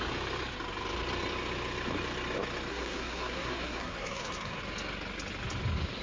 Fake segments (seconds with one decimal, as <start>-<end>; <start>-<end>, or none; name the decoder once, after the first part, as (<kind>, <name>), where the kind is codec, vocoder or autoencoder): 2.7-4.6 (codec, SNAC)